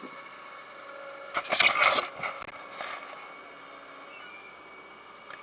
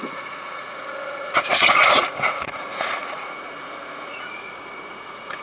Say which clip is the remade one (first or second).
second